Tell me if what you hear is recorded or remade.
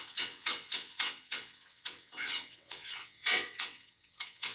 remade